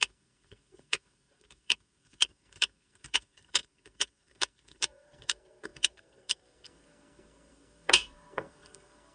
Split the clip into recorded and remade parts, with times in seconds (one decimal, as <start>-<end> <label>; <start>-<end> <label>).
0.0-9.1 remade